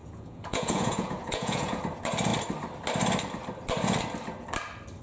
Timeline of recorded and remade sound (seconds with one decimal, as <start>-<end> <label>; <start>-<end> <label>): 0.0-1.8 remade; 1.8-5.0 recorded

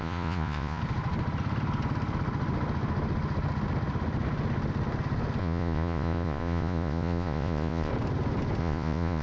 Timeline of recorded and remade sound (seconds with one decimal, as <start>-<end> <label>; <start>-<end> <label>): 0.0-0.8 remade; 0.8-5.4 recorded; 5.4-7.9 remade; 7.9-8.6 recorded; 8.6-9.2 remade

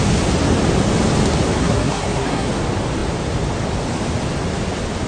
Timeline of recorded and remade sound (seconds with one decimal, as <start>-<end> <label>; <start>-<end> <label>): 0.0-1.6 recorded; 1.6-2.5 remade; 2.5-5.1 recorded

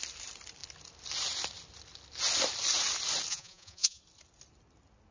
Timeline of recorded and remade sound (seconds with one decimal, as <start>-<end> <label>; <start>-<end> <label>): 0.0-3.3 recorded; 3.3-4.0 remade; 4.0-5.1 recorded